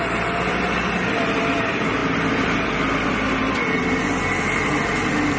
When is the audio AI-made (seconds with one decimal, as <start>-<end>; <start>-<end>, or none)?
none